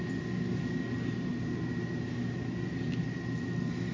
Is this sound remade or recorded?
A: recorded